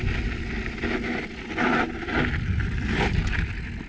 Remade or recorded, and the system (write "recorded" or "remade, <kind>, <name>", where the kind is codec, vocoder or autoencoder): recorded